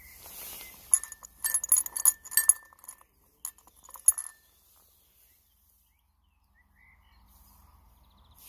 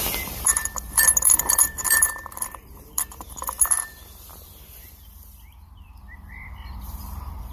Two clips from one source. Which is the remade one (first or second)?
second